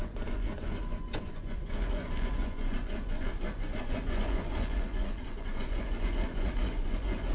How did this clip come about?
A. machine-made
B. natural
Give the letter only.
A